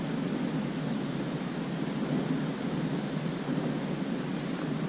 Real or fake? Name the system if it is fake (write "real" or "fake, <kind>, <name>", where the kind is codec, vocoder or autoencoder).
real